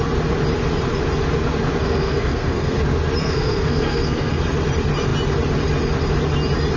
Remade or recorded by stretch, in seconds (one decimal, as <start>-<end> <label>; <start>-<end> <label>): 0.0-1.8 recorded; 1.8-2.8 remade; 2.8-3.2 recorded; 3.2-4.4 remade; 4.4-6.8 recorded